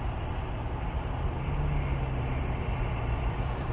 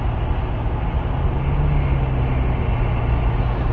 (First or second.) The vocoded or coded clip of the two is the first